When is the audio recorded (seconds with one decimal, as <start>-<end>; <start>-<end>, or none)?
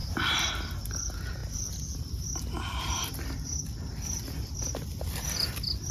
0.0-5.9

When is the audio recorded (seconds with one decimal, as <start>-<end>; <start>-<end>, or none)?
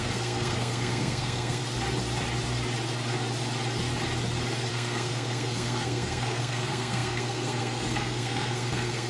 1.6-4.7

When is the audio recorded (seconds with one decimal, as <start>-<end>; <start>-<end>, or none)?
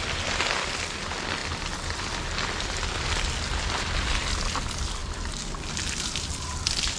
0.0-7.0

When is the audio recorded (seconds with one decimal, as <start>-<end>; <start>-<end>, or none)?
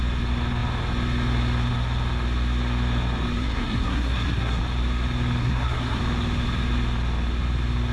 0.0-3.4; 4.6-5.4; 6.0-7.9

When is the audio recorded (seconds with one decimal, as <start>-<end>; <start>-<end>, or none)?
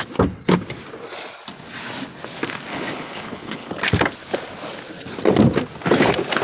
0.0-2.7; 3.7-6.4